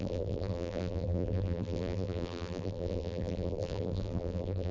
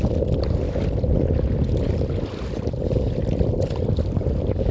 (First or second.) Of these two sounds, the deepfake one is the first